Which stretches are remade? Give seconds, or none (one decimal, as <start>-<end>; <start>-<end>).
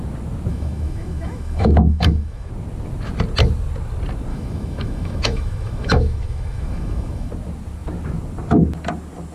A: 0.5-2.5; 4.3-7.3